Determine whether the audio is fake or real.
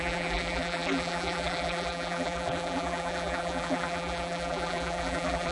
fake